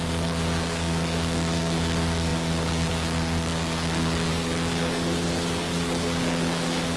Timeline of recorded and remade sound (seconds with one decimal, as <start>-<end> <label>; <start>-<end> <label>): 0.0-7.0 remade